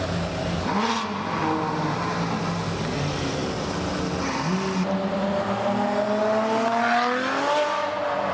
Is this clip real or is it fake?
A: real